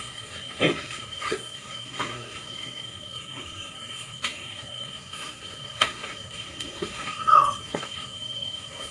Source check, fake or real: fake